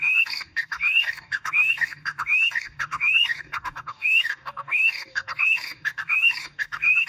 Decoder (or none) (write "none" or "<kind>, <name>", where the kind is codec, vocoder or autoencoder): codec, DAC